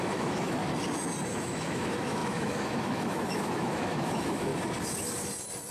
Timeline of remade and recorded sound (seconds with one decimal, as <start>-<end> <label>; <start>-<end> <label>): 0.0-0.6 remade; 0.6-1.3 recorded; 1.3-4.5 remade; 4.5-5.7 recorded